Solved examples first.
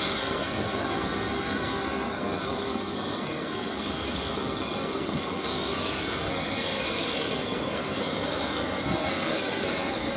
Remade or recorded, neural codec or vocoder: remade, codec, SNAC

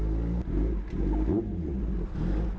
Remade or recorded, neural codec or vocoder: recorded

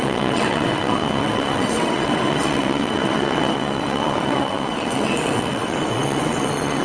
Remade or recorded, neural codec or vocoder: remade, vocoder, WaveNeXt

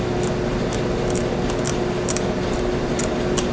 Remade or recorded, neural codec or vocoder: recorded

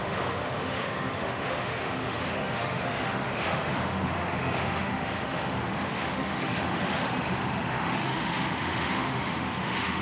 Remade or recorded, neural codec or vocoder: remade, autoencoder, DAC-VAE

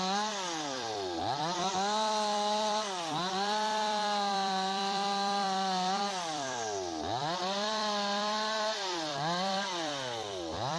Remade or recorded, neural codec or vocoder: remade, vocoder, BigVGAN v2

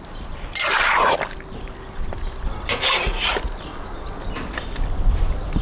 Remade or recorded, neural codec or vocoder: recorded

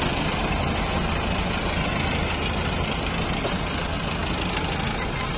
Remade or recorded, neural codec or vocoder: recorded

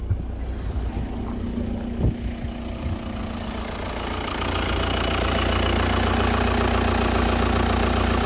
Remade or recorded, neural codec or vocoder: recorded